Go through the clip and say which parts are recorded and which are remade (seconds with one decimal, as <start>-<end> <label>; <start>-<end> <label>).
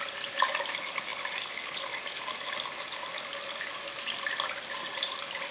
0.0-5.5 recorded